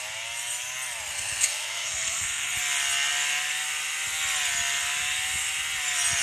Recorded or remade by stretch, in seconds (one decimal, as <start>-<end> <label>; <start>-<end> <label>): 0.0-1.1 recorded; 1.1-2.6 remade; 2.6-6.2 recorded